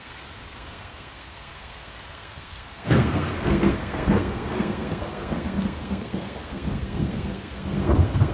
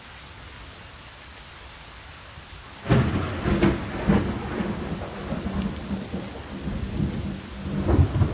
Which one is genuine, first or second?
second